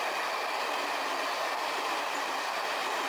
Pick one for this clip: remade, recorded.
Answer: recorded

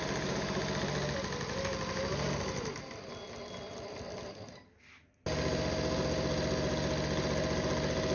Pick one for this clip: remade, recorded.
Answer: recorded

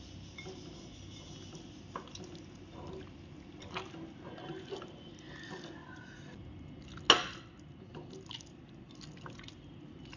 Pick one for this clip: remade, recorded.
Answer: recorded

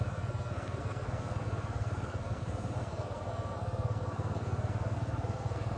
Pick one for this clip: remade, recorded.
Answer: remade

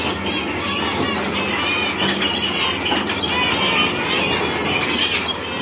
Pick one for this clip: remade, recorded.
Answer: recorded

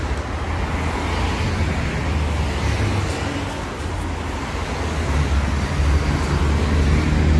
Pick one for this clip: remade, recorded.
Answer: recorded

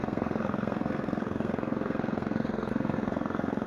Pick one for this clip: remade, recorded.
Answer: remade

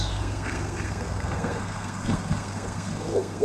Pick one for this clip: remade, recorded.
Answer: remade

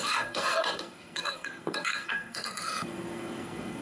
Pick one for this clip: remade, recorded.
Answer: remade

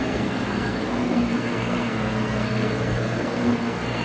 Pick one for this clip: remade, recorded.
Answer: remade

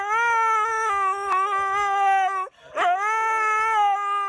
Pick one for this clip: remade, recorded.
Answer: recorded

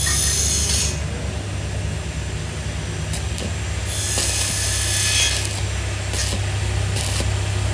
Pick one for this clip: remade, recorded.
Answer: recorded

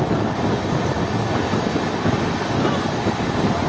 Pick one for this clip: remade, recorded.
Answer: recorded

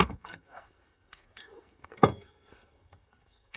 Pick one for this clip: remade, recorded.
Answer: remade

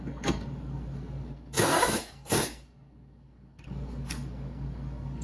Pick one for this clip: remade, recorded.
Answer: remade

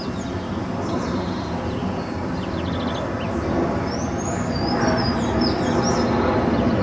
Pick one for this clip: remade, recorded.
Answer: recorded